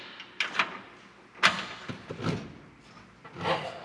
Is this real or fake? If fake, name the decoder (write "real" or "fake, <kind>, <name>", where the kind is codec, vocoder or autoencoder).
real